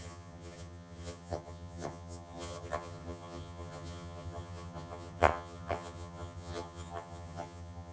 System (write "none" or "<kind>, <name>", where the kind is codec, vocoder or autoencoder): vocoder, HiFi-GAN